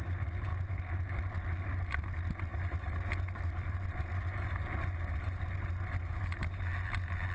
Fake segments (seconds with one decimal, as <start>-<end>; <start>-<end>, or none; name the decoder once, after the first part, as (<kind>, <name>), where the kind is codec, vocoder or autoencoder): none